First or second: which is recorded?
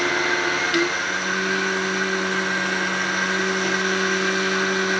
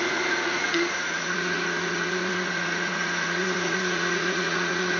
first